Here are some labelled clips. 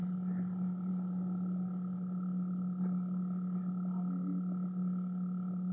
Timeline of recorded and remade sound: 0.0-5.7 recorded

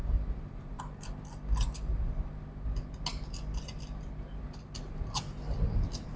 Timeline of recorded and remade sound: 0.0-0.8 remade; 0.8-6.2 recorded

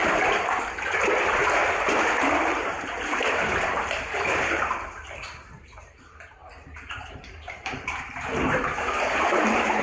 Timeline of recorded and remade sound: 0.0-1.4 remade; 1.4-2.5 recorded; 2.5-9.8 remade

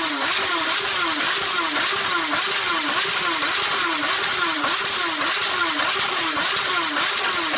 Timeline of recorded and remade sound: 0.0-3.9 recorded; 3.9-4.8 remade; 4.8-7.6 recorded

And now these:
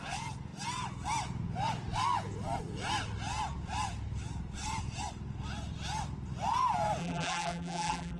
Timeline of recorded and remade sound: 0.0-7.0 recorded; 7.0-8.2 remade